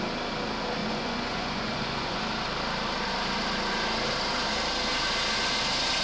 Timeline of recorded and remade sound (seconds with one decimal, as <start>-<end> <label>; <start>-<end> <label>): 0.0-0.8 recorded; 0.8-2.2 remade; 2.2-6.0 recorded